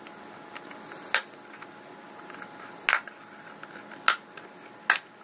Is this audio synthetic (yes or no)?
no